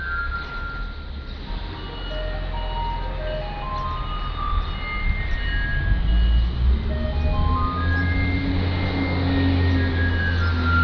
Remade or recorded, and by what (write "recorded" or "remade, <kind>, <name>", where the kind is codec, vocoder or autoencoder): recorded